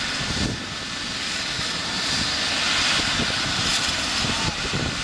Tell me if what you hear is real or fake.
real